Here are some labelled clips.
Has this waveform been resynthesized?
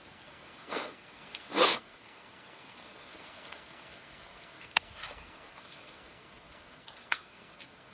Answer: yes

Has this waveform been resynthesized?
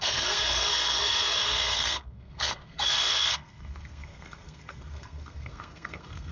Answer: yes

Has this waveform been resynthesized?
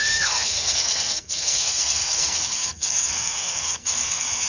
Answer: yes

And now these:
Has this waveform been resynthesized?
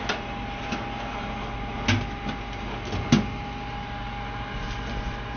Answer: no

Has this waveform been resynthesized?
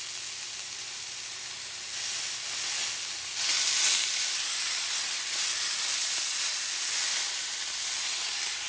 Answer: no